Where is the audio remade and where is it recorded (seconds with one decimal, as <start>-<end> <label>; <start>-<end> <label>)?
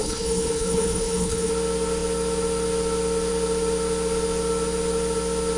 0.0-1.5 remade; 1.5-5.6 recorded